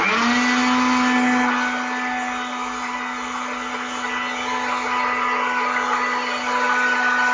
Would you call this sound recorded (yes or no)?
yes